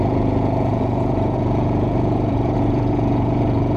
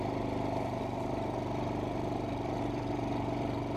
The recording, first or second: second